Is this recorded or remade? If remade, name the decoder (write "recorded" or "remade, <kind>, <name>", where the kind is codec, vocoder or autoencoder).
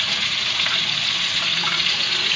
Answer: remade, vocoder, Vocos